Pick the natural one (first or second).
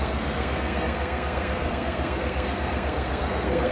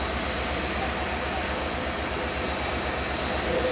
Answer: second